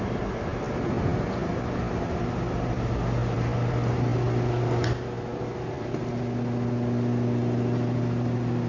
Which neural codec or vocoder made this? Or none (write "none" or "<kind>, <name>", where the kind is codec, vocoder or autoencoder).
none